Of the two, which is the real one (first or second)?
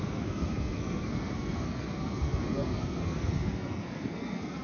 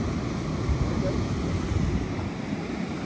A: second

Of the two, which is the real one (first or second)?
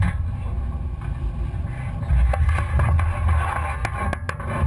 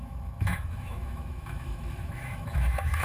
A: first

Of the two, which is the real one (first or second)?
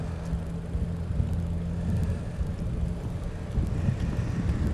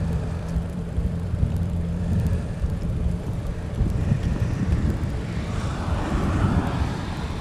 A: first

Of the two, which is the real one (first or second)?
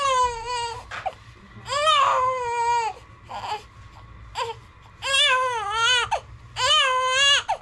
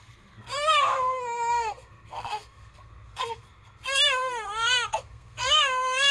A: first